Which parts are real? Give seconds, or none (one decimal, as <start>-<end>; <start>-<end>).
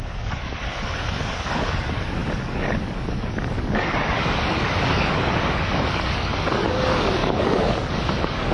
none